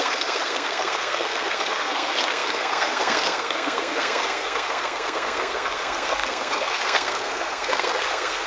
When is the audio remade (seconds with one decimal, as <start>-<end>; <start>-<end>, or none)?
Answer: 0.0-8.5